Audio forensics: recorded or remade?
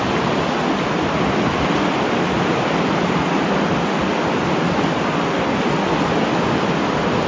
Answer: recorded